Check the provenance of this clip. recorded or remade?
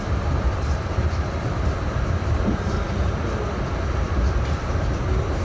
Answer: remade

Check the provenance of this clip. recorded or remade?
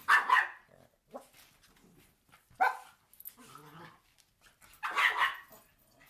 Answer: recorded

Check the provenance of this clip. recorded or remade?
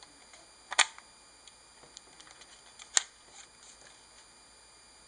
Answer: recorded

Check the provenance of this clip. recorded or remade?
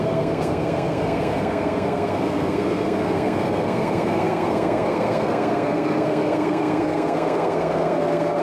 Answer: remade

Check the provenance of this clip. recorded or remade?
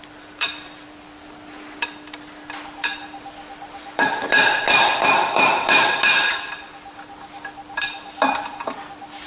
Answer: remade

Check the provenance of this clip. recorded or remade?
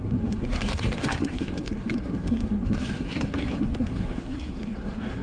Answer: remade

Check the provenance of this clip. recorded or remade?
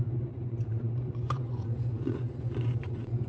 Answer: remade